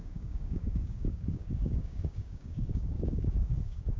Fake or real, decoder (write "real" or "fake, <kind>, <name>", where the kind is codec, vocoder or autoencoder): fake, codec, DAC